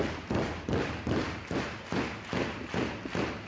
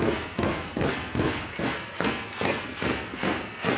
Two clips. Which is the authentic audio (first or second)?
first